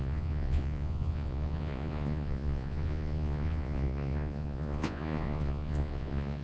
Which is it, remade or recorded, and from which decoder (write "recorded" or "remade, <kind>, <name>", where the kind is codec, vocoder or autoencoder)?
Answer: remade, vocoder, Vocos